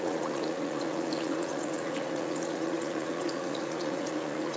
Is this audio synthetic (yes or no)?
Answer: yes